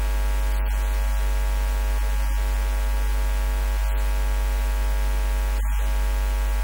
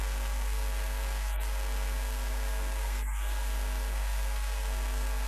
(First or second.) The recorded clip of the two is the first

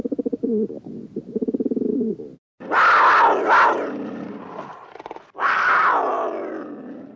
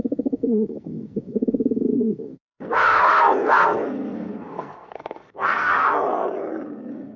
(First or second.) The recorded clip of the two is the first